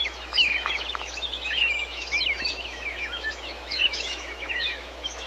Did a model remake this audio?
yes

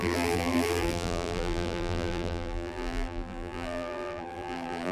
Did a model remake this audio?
yes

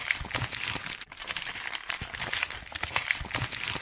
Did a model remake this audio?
no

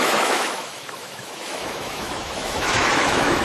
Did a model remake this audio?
yes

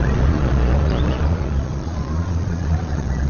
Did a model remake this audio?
yes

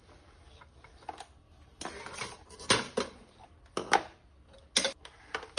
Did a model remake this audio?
no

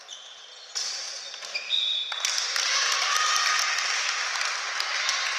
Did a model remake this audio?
no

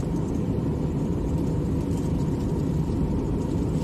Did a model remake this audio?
no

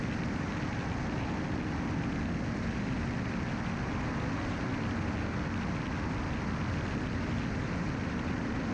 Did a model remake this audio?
no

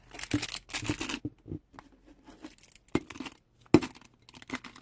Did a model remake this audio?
no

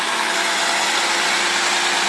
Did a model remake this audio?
no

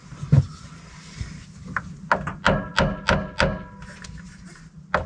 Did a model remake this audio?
no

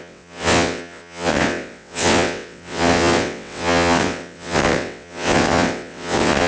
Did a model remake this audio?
yes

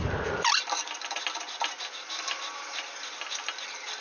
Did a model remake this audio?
no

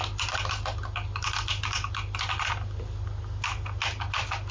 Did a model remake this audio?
no